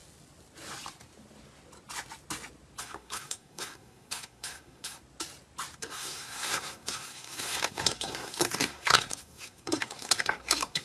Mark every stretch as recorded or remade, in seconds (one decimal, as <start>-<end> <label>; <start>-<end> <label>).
0.0-2.8 recorded; 2.8-5.0 remade; 5.0-5.8 recorded; 5.8-10.8 remade

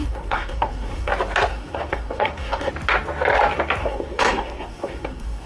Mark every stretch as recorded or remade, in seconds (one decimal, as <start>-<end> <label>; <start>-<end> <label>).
0.0-1.1 remade; 1.1-1.5 recorded; 1.5-2.7 remade; 2.7-3.8 recorded; 3.8-5.5 remade

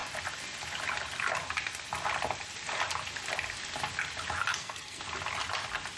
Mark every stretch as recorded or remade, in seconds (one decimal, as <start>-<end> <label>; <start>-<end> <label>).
0.0-4.5 recorded; 4.5-5.0 remade; 5.0-6.0 recorded

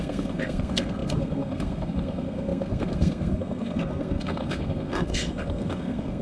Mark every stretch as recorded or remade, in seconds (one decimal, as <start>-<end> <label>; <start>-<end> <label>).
0.0-6.2 remade

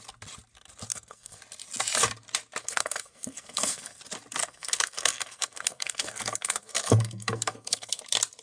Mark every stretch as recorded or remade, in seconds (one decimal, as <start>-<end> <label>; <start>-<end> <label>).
0.0-0.9 recorded; 0.9-1.4 remade; 1.4-2.6 recorded; 2.6-4.0 remade; 4.0-4.4 recorded; 4.4-8.0 remade; 8.0-8.4 recorded

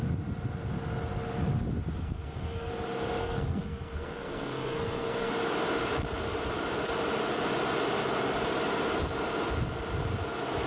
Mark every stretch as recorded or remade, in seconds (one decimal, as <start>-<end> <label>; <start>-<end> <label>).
0.0-2.0 recorded; 2.0-2.7 remade; 2.7-3.2 recorded; 3.2-5.3 remade; 5.3-10.7 recorded